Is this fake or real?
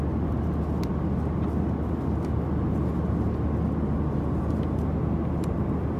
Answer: real